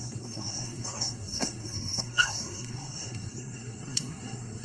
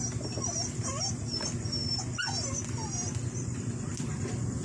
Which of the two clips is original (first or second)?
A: second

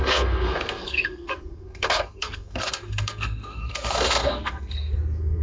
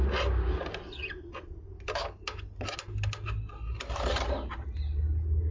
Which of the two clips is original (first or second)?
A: second